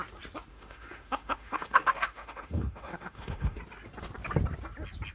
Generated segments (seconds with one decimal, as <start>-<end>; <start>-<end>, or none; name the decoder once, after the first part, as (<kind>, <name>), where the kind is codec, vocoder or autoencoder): 0.5-3.6 (autoencoder, DAC-VAE)